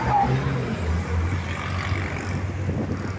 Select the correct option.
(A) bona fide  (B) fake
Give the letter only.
A